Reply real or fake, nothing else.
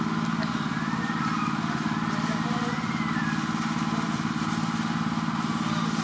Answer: real